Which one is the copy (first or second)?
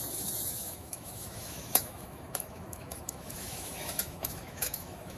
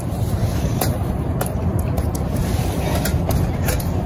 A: first